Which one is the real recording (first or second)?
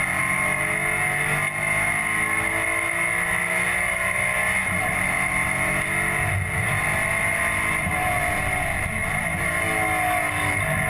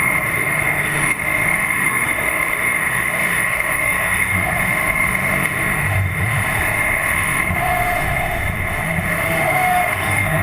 first